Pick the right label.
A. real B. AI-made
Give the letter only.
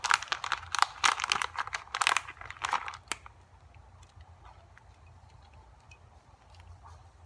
A